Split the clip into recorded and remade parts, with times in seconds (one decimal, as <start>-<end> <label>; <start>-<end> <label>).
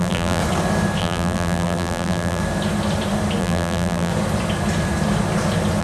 0.0-0.4 remade; 0.4-1.0 recorded; 1.0-2.4 remade; 2.4-3.4 recorded; 3.4-4.1 remade; 4.1-5.8 recorded